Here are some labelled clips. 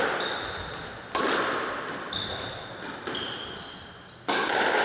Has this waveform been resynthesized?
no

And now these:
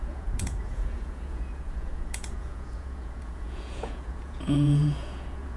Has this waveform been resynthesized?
yes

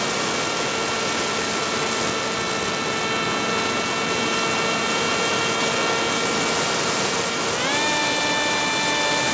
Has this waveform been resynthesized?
no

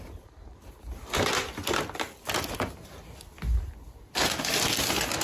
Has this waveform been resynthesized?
no